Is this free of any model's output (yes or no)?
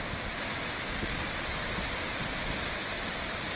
yes